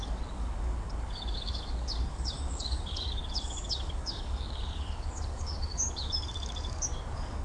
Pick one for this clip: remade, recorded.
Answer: remade